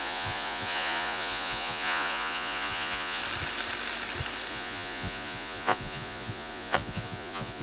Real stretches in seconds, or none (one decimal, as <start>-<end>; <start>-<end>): 3.2-4.5